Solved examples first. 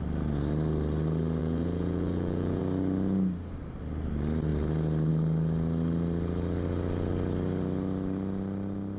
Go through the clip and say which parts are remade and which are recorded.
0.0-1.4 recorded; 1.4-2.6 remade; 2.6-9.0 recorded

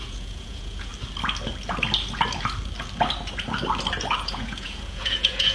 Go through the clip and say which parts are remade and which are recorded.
0.0-0.9 remade; 0.9-4.2 recorded; 4.2-5.5 remade

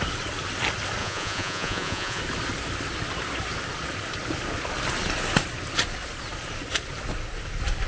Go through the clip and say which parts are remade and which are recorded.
0.0-1.0 recorded; 1.0-2.2 remade; 2.2-7.9 recorded

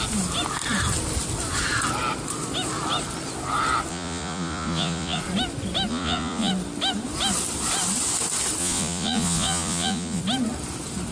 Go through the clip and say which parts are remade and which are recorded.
0.0-3.9 recorded; 3.9-5.2 remade; 5.2-5.9 recorded; 5.9-6.5 remade; 6.5-8.6 recorded; 8.6-10.2 remade; 10.2-11.1 recorded

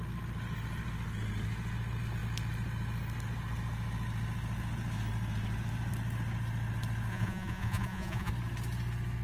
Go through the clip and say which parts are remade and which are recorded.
0.0-7.1 recorded; 7.1-8.3 remade; 8.3-9.2 recorded